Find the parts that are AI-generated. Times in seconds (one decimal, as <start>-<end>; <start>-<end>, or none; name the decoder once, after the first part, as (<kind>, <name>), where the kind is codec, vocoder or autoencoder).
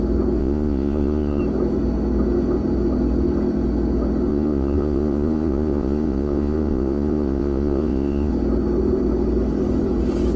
0.4-1.4 (vocoder, Vocos); 4.3-8.3